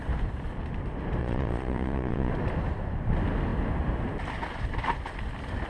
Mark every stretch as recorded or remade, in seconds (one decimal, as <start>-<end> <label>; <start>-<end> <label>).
0.0-1.2 recorded; 1.2-2.3 remade; 2.3-5.7 recorded